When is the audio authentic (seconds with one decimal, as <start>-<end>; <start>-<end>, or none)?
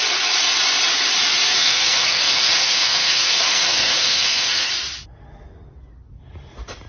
0.0-1.6; 4.7-6.9